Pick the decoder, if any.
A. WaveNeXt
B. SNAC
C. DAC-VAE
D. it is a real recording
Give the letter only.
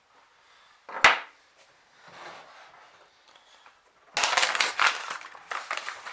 D